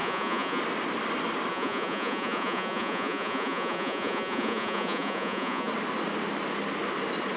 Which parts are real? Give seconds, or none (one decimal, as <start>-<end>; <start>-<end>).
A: 0.6-1.5; 5.7-7.4